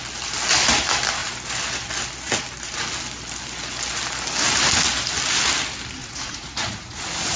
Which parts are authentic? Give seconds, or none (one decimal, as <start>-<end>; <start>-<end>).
0.0-6.0